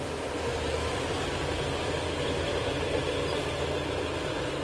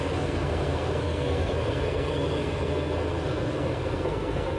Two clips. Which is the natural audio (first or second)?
first